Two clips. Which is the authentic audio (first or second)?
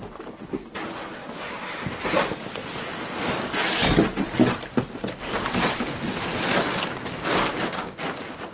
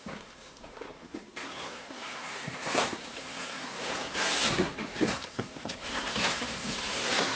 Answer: first